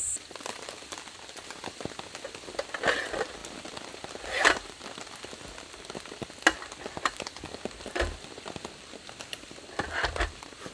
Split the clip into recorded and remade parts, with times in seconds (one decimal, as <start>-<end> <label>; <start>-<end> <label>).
0.0-10.7 recorded